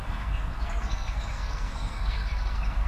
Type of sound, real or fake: fake